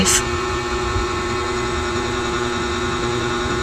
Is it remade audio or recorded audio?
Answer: remade